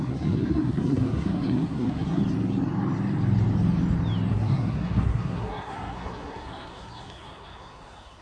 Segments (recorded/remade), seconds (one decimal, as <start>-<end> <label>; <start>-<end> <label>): 0.0-2.2 remade; 2.2-4.3 recorded; 4.3-8.2 remade